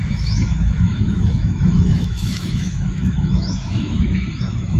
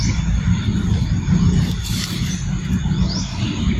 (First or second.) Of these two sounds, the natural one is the second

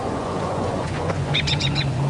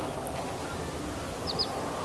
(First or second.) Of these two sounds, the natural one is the second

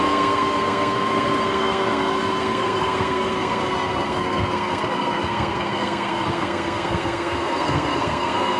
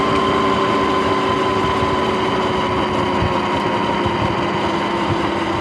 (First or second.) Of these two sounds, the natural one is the second